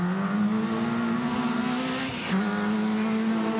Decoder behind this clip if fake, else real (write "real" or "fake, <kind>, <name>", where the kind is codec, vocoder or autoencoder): real